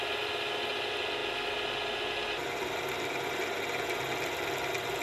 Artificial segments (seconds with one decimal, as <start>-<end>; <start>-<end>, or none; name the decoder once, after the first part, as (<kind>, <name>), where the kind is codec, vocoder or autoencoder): none